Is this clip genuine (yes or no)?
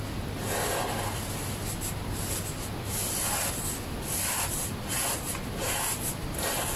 yes